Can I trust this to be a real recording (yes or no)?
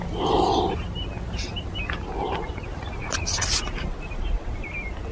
yes